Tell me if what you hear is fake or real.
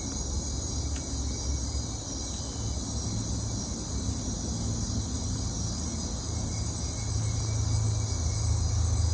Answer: real